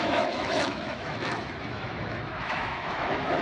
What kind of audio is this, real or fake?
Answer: fake